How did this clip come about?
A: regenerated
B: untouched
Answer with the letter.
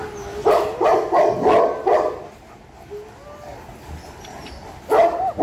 B